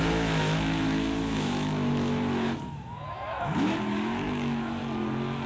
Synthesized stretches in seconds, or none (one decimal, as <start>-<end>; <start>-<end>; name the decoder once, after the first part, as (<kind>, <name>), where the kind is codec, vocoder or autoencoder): 0.0-4.8 (autoencoder, DAC-VAE)